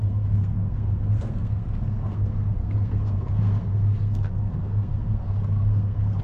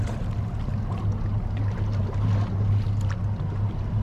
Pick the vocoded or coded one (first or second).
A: first